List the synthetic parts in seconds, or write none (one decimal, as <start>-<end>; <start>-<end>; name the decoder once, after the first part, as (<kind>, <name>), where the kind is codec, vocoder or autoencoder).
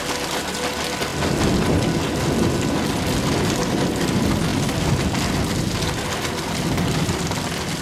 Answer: none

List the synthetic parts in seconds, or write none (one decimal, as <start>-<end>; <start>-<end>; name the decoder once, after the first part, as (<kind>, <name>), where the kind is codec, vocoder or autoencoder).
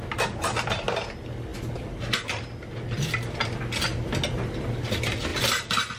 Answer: none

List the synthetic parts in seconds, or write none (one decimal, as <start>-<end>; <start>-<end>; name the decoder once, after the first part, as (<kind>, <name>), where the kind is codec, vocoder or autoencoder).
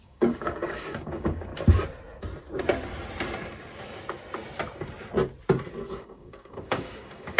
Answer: 0.0-1.5 (codec, DAC); 5.9-7.4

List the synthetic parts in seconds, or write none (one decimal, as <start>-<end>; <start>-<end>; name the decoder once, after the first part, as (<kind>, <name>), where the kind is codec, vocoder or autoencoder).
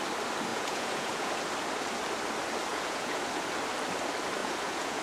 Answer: 0.5-1.4 (vocoder, Vocos); 2.7-3.2; 4.4-5.0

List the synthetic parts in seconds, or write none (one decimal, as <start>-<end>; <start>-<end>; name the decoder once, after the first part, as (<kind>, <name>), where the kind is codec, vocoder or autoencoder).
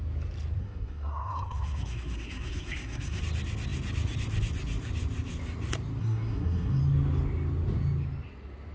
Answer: 0.6-3.2 (codec, SNAC); 6.0-6.8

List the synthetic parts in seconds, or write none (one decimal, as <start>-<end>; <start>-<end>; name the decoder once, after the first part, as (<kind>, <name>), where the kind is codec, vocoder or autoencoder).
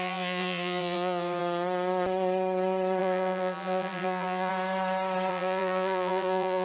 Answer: 0.0-1.4 (vocoder, BigVGAN v2); 3.0-4.5; 5.3-6.6